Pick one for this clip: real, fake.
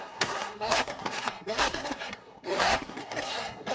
fake